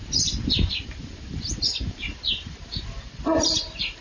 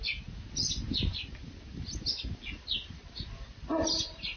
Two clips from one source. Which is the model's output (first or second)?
first